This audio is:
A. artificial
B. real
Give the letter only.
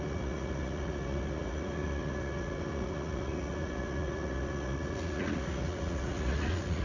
A